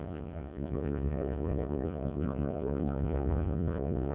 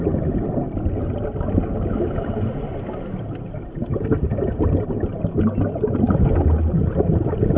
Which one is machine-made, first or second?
first